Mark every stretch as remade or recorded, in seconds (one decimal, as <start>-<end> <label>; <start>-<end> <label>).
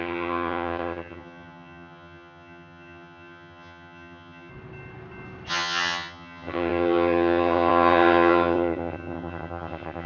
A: 0.0-4.5 remade; 4.5-5.5 recorded; 5.5-10.1 remade